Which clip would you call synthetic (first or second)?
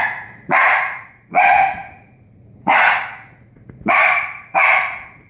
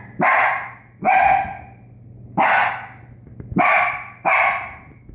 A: first